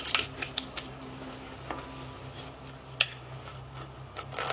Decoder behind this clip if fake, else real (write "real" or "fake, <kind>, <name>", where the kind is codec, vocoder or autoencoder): real